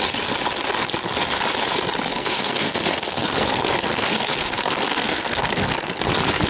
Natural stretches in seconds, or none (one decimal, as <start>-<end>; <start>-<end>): 0.0-2.1; 6.0-6.5